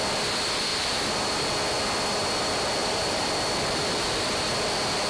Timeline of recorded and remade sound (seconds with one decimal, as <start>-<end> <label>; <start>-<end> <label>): 0.0-0.7 recorded; 0.7-1.4 remade; 1.4-2.8 recorded; 2.8-3.3 remade; 3.3-5.1 recorded